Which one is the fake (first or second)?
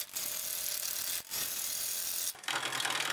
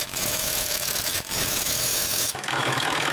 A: second